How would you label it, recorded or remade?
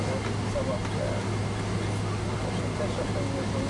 recorded